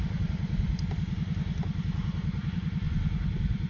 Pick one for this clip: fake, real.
fake